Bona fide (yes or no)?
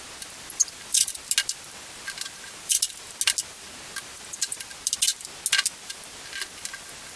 yes